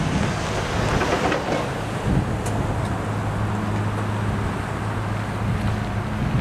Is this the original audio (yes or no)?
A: yes